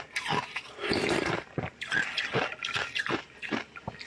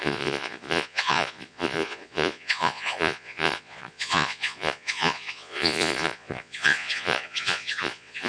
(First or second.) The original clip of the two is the first